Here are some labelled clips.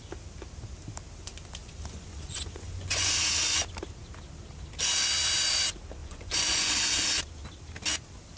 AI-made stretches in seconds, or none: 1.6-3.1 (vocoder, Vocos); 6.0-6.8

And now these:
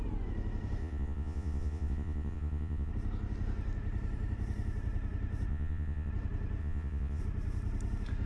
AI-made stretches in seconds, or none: 0.8-2.9 (vocoder, Vocos); 5.5-6.1; 6.6-7.2

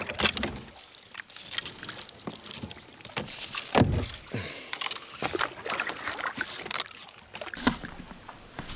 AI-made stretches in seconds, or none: none

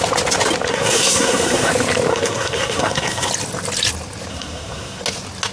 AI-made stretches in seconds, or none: 0.7-1.7 (codec, SNAC); 2.1-3.3; 4.3-5.0

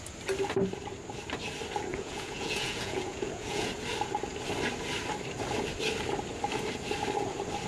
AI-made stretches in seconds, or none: 1.9-3.7 (vocoder, Vocos)

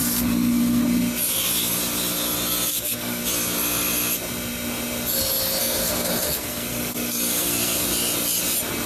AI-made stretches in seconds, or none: 0.0-0.8 (codec, SNAC); 2.7-3.2; 5.6-7.8

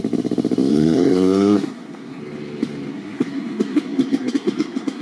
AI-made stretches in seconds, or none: 0.7-2.2 (codec, SNAC); 2.9-5.0

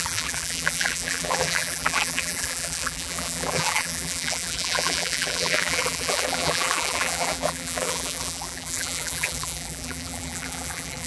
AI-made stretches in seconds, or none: 0.0-11.1 (vocoder, BigVGAN v2)